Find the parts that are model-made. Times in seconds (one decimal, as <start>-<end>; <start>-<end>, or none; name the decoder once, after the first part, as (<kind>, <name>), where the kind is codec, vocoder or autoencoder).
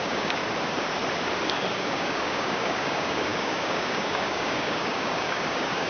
0.0-0.4 (codec, DAC); 1.7-5.9